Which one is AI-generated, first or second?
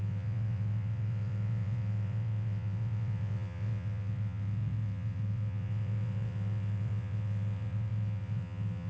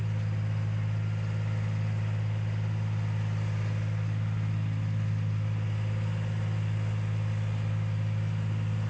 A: first